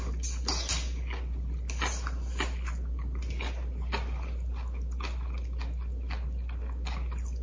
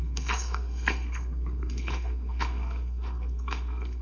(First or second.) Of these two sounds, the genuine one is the first